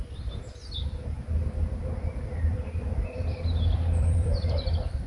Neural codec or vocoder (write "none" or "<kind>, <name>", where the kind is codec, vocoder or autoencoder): vocoder, BigVGAN v2